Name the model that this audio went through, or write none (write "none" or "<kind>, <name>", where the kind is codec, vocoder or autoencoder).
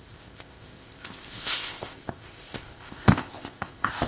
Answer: codec, ZipCodec